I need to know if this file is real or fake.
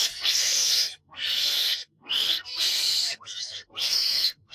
fake